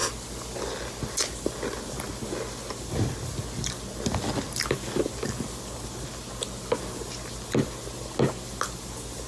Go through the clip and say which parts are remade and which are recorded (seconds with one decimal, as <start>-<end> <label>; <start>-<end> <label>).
0.0-9.3 recorded